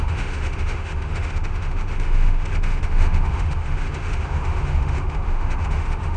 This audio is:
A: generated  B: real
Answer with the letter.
A